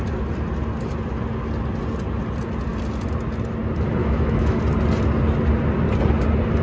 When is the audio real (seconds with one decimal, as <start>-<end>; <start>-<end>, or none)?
0.0-4.0; 4.6-6.6